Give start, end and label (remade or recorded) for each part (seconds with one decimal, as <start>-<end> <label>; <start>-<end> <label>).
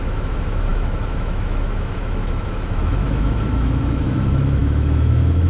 0.0-5.5 remade